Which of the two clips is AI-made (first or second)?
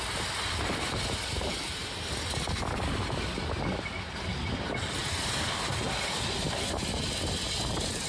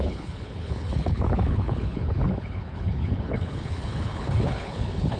second